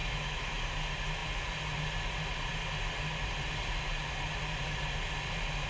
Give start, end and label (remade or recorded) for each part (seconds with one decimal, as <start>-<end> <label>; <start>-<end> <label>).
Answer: 0.0-0.6 remade; 0.6-5.7 recorded